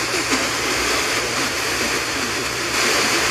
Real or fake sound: fake